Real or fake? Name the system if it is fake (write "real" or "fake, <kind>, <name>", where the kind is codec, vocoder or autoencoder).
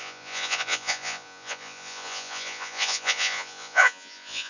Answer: fake, vocoder, Vocos